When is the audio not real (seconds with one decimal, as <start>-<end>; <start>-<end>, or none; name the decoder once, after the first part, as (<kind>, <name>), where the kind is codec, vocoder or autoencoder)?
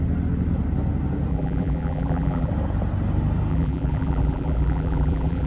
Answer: 1.3-2.5 (vocoder, BigVGAN v2); 3.5-5.5